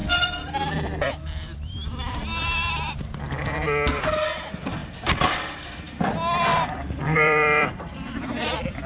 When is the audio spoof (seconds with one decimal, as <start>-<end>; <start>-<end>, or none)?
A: 0.0-3.0; 4.8-5.9; 6.5-7.8